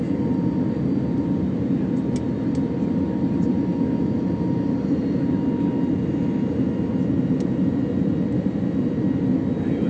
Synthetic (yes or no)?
no